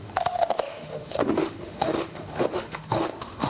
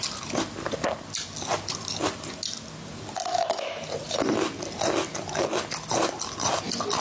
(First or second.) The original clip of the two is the second